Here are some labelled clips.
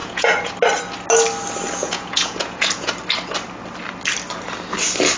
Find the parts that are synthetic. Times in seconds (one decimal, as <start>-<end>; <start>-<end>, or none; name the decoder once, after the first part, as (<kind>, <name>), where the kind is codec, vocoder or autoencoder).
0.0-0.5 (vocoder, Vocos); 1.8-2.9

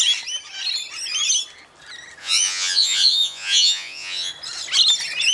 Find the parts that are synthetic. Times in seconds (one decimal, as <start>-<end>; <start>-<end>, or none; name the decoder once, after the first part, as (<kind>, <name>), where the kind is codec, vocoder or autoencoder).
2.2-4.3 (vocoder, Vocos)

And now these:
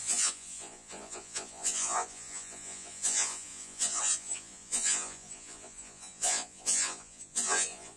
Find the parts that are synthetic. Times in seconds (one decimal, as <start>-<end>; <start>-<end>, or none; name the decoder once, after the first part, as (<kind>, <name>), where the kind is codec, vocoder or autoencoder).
0.0-8.0 (vocoder, Vocos)

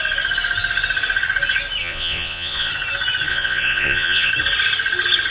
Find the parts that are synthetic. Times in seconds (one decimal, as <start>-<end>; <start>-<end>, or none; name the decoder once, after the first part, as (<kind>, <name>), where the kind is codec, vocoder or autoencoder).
1.8-2.7 (vocoder, Vocos); 3.3-4.3

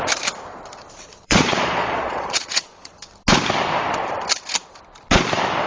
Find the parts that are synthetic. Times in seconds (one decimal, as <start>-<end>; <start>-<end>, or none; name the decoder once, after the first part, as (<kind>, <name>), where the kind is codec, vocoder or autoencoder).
1.1-3.1 (vocoder, Vocos)

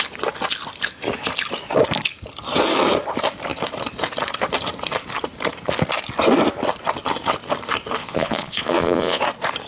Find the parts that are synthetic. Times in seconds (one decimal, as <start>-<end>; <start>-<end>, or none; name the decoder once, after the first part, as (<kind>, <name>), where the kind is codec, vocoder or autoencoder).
8.0-9.2 (vocoder, Vocos)